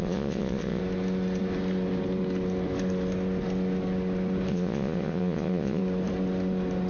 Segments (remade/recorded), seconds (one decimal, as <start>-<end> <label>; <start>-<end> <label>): 0.0-0.8 remade; 0.8-4.5 recorded; 4.5-5.8 remade; 5.8-6.9 recorded